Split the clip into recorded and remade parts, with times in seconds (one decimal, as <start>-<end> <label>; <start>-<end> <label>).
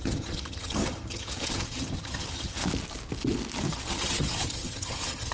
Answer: 0.0-2.6 remade; 2.6-3.7 recorded; 3.7-5.3 remade